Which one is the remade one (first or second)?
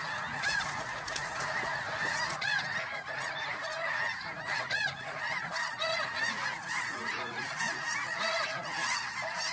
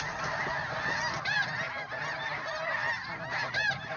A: first